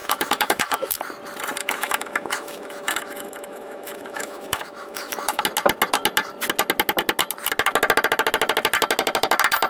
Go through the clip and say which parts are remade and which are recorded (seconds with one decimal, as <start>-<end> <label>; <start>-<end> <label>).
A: 0.0-1.0 remade; 1.0-1.6 recorded; 1.6-5.4 remade; 5.4-9.7 recorded